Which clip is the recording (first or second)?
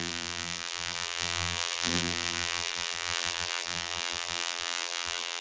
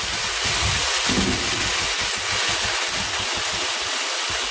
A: second